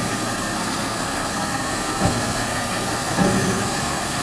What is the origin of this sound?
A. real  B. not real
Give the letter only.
B